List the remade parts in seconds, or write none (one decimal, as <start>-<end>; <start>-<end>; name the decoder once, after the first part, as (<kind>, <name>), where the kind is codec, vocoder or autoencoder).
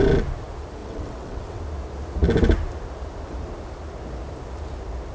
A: 0.8-1.6 (vocoder, WaveNeXt)